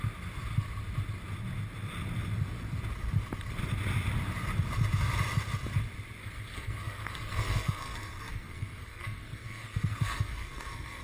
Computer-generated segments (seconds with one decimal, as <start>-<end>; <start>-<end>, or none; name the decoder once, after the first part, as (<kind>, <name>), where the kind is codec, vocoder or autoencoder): 6.2-11.0 (codec, SNAC)